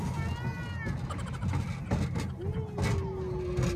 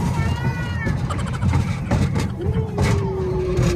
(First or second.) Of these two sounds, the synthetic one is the second